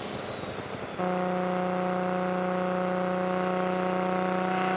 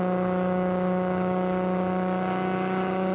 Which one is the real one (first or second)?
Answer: first